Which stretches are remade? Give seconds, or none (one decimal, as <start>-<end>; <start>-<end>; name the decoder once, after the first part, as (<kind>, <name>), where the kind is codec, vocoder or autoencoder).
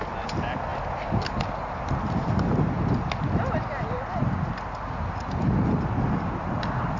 none